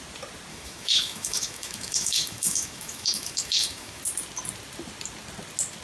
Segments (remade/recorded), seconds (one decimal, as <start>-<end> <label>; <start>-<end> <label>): 0.0-0.5 recorded; 0.5-4.0 remade; 4.0-5.8 recorded